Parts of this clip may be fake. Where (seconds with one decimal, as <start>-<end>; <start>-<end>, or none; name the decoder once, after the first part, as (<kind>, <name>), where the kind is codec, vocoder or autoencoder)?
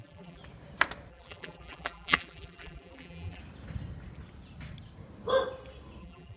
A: 0.0-0.4 (vocoder, BigVGAN v2); 1.1-3.4; 6.0-6.4